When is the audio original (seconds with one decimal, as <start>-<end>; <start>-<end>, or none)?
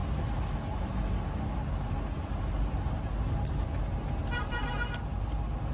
0.0-4.2; 4.7-5.7